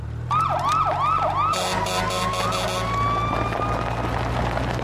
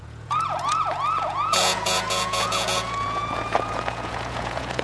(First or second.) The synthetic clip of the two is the second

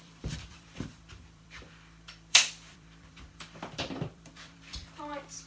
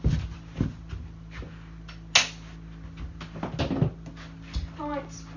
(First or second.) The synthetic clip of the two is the first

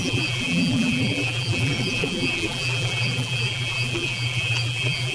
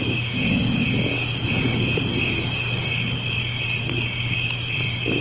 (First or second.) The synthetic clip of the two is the first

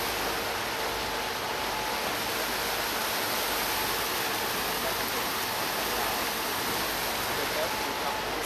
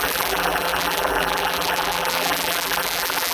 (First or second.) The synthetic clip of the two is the second